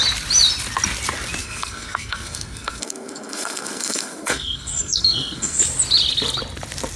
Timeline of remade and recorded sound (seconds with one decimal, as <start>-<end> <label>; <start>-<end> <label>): 0.0-1.4 recorded; 1.4-5.6 remade; 5.6-7.0 recorded